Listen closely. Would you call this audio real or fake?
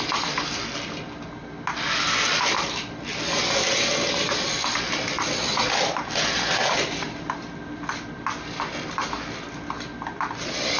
real